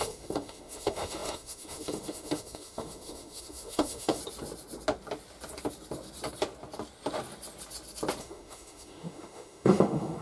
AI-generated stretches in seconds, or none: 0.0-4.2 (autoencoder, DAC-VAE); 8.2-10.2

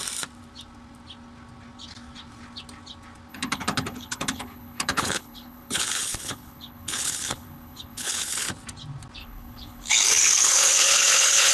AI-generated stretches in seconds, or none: 3.3-8.5 (codec, HILCodec); 9.2-11.5

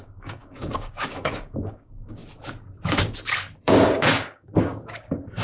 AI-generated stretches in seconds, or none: 0.0-2.2 (codec, DAC); 3.6-5.4

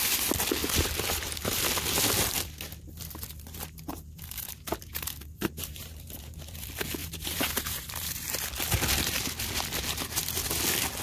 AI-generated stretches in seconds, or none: 0.6-1.6 (vocoder, BigVGAN v2); 3.9-6.4; 7.0-8.1

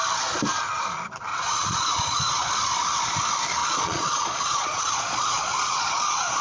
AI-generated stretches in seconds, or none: 1.3-2.5 (vocoder, Vocos); 3.6-6.4

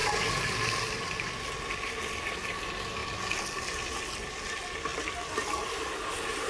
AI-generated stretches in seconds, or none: none

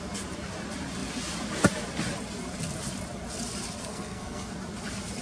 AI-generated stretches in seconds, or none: 3.8-4.5 (codec, SNAC)